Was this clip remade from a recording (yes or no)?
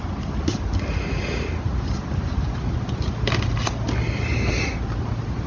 no